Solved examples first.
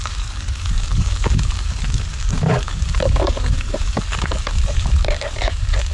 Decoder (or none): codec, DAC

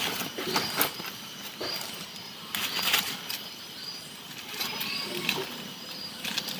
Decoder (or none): none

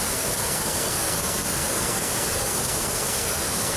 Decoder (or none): codec, SNAC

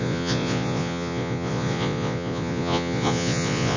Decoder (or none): vocoder, Vocos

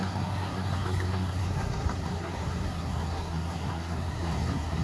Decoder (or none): codec, SNAC